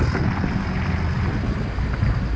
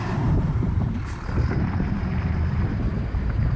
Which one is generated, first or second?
second